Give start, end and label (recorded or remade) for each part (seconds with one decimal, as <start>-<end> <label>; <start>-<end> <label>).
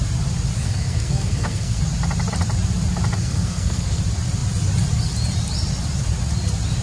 0.0-0.6 recorded; 0.6-1.8 remade; 1.8-3.2 recorded; 3.2-4.0 remade; 4.0-6.8 recorded